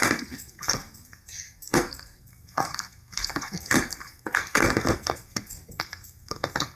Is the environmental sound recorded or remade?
remade